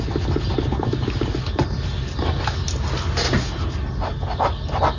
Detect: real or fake real